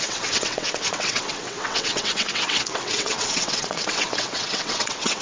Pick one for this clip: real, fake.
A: fake